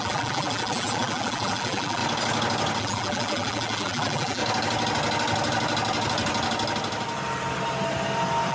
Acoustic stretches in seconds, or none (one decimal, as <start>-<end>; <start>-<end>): 2.0-2.8; 4.4-8.5